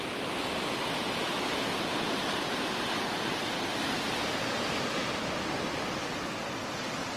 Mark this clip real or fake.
real